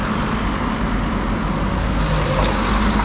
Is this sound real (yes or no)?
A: yes